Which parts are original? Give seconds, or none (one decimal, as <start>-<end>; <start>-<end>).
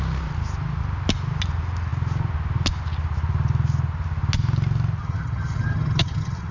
0.0-5.0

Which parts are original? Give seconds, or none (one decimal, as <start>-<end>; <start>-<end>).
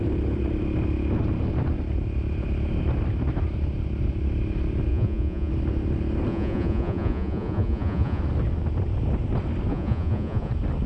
0.0-4.9; 5.5-6.3; 8.2-9.7; 10.5-10.9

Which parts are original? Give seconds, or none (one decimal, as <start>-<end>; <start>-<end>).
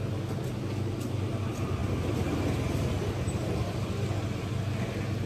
0.0-5.3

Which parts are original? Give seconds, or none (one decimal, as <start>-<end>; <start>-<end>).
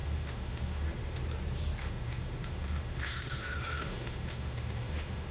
1.2-1.8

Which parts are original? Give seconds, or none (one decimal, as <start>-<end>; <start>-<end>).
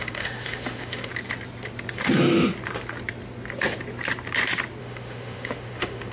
1.1-4.8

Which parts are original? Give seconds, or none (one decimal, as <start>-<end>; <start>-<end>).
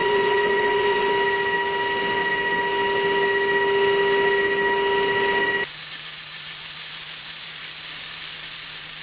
1.1-9.0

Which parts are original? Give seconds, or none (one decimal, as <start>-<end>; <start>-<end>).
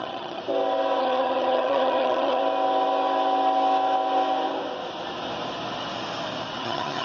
0.4-1.0; 2.4-6.6